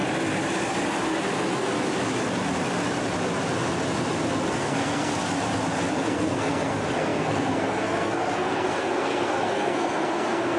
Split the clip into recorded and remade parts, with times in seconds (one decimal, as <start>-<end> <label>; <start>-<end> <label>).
0.0-4.5 recorded; 4.5-5.1 remade; 5.1-5.9 recorded; 5.9-10.6 remade